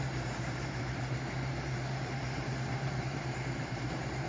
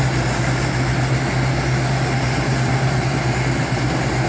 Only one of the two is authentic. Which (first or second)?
second